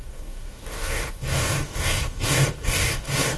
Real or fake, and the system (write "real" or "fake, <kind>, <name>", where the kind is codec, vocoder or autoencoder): fake, codec, DAC